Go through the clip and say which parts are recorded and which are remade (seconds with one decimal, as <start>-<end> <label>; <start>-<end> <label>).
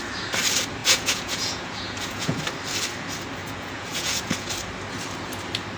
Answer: 0.0-0.8 recorded; 0.8-2.4 remade; 2.4-3.4 recorded; 3.4-4.5 remade; 4.5-5.8 recorded